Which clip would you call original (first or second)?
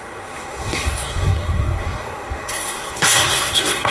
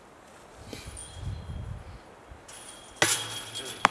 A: second